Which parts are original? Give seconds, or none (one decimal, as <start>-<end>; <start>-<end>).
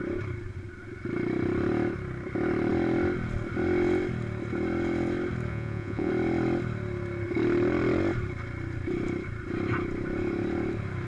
0.0-5.5; 6.1-11.1